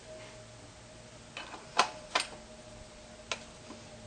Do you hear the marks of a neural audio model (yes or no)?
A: no